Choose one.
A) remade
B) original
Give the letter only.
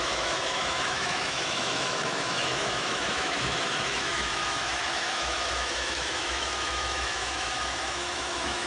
A